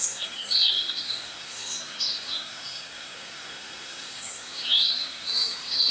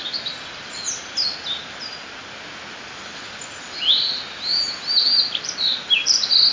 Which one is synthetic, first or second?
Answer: first